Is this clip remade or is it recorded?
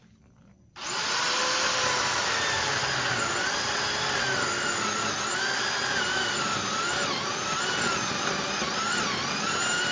recorded